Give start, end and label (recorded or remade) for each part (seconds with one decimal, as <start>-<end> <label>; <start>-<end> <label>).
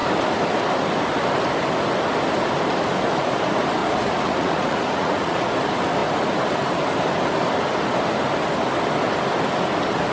0.0-3.8 recorded; 3.8-5.4 remade; 5.4-10.1 recorded